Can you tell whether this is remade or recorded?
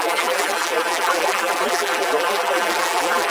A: remade